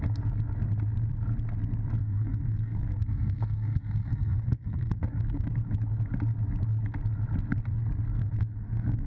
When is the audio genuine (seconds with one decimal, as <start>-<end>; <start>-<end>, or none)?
0.0-2.0; 5.5-8.2